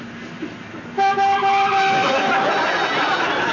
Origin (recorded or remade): recorded